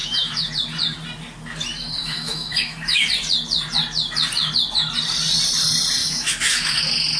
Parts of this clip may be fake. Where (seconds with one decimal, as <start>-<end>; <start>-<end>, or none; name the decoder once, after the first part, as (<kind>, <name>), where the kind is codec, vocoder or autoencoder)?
0.0-0.5 (autoencoder, DAC-VAE); 2.0-3.1; 6.0-6.8